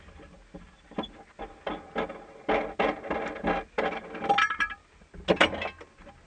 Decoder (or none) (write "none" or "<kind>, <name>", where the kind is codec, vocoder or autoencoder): none